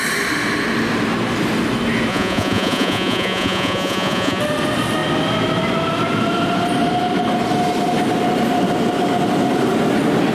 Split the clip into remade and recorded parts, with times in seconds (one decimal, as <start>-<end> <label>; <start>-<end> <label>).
0.0-2.1 recorded; 2.1-4.4 remade; 4.4-10.3 recorded